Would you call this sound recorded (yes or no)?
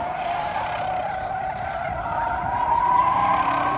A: yes